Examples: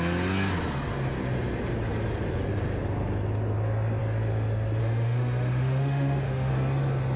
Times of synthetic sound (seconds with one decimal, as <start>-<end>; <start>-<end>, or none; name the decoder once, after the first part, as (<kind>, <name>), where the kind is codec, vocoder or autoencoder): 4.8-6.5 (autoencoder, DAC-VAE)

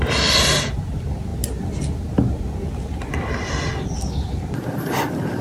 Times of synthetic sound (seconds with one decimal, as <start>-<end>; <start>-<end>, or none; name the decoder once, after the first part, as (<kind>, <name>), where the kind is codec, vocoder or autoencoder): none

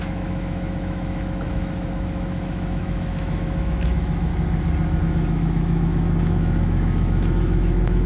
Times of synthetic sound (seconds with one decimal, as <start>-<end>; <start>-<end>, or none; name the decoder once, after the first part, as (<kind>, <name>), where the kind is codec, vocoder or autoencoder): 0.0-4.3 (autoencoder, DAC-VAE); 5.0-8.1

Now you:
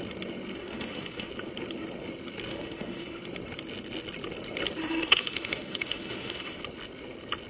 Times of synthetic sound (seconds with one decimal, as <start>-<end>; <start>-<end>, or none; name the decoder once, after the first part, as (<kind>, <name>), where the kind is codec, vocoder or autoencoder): 0.6-1.3 (autoencoder, DAC-VAE); 2.5-3.2; 4.8-6.6

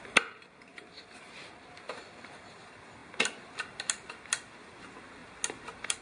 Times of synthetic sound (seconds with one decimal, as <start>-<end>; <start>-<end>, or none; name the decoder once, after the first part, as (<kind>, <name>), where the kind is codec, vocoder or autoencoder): none

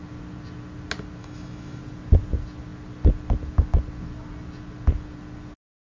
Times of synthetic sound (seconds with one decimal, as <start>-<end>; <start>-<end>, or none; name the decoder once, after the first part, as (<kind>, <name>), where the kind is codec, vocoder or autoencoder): 1.2-1.8 (autoencoder, DAC-VAE)